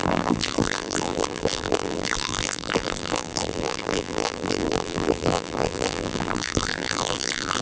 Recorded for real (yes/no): no